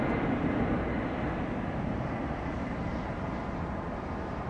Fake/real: real